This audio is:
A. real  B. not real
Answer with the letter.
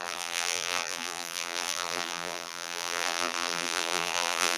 B